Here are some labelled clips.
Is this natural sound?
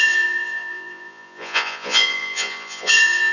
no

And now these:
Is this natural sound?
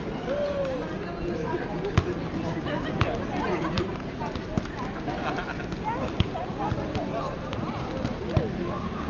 yes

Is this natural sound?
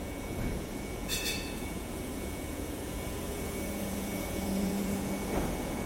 no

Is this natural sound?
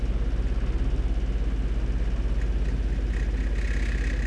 yes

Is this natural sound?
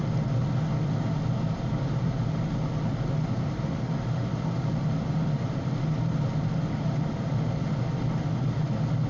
yes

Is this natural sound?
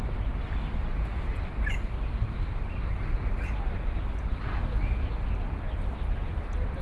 yes